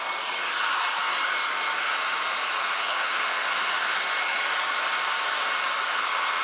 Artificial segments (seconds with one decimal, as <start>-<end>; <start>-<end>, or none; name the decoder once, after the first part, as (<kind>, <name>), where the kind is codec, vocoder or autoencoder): 2.6-4.0 (vocoder, HiFi-GAN); 5.9-6.4